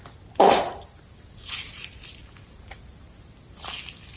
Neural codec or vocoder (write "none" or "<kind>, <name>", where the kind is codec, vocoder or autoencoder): none